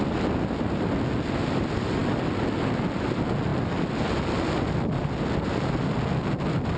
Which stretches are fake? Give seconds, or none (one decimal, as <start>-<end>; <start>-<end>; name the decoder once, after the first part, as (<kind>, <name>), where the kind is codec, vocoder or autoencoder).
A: 3.5-4.2 (vocoder, BigVGAN v2)